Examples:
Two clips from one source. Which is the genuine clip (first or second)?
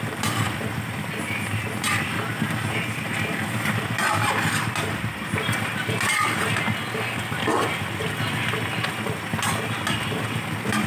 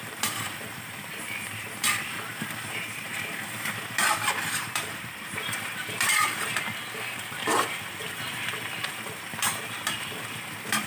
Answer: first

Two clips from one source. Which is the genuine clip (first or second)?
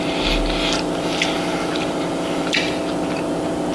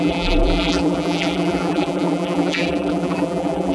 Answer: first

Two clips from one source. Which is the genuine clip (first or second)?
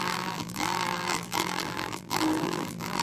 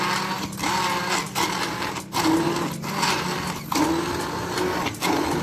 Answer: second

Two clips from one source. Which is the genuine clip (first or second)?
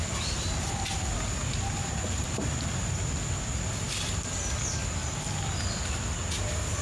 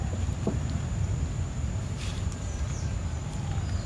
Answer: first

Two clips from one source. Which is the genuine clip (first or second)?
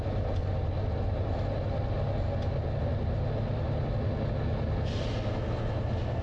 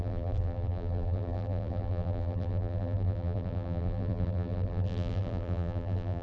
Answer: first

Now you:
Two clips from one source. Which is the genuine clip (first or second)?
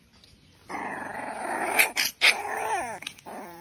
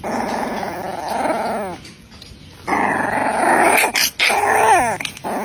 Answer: second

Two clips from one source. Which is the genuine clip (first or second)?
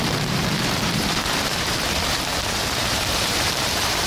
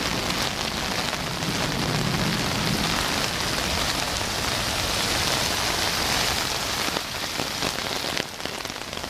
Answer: second